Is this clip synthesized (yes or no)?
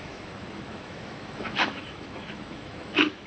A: yes